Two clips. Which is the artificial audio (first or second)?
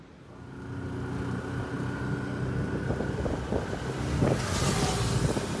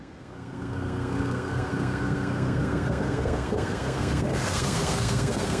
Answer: second